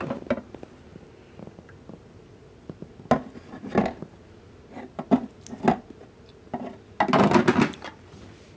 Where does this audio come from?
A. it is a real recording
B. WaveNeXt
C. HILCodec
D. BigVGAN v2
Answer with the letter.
A